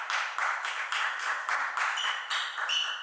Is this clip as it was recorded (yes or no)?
yes